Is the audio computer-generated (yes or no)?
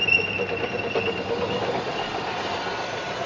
no